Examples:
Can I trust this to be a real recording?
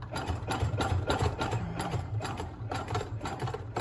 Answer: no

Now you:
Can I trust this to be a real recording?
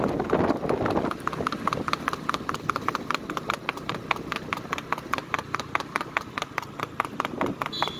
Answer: yes